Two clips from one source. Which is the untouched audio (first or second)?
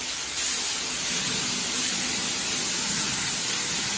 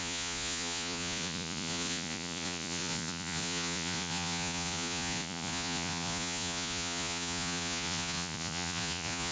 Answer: first